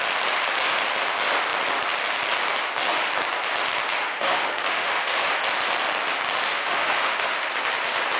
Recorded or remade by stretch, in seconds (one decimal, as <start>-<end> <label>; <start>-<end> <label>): 0.0-4.0 recorded; 4.0-5.3 remade; 5.3-6.5 recorded; 6.5-7.5 remade; 7.5-8.2 recorded